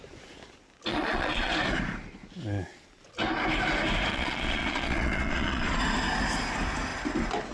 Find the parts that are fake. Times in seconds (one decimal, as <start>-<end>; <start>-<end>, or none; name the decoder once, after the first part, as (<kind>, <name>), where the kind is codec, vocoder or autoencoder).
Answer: 0.9-1.5 (vocoder, Vocos); 4.1-5.8